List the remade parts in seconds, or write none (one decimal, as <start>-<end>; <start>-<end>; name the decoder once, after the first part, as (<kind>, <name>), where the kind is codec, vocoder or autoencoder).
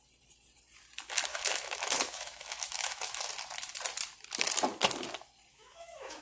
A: 1.3-3.3 (autoencoder, DAC-VAE); 5.5-6.2